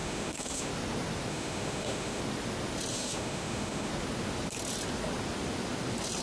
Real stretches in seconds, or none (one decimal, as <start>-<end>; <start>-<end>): 0.7-1.3; 2.2-2.9; 3.9-6.2